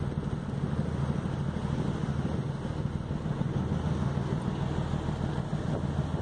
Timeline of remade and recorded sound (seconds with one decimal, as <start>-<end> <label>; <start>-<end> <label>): 0.0-6.2 recorded